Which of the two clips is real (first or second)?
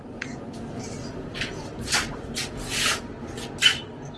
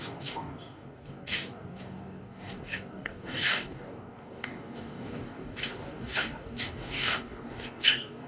first